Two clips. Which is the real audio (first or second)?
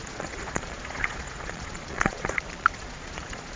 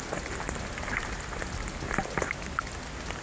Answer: second